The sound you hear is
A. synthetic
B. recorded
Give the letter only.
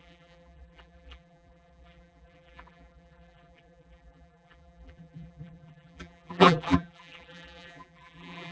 A